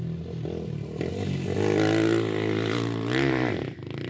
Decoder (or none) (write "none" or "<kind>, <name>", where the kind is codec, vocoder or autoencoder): none